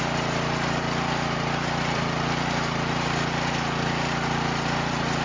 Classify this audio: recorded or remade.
recorded